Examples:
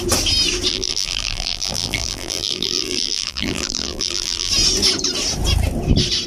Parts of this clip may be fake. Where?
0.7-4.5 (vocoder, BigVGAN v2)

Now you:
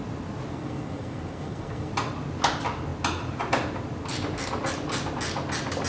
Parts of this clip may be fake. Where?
0.5-1.9 (codec, SNAC)

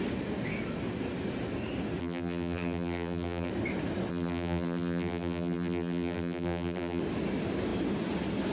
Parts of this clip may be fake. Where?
2.0-3.5 (vocoder, BigVGAN v2); 4.1-7.0

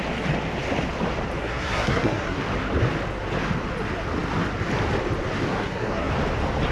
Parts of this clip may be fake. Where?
1.4-2.4 (codec, SNAC); 5.5-6.1

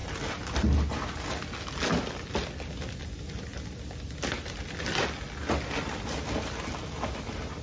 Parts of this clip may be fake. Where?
none